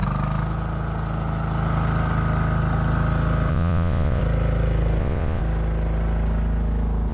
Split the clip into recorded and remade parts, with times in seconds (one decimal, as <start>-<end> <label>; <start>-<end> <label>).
0.0-3.5 recorded; 3.5-4.2 remade; 4.2-5.0 recorded; 5.0-5.4 remade; 5.4-7.1 recorded